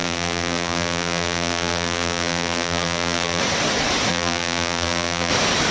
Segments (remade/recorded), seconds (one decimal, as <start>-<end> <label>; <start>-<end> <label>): 0.0-3.4 remade; 3.4-4.1 recorded; 4.1-5.3 remade; 5.3-5.7 recorded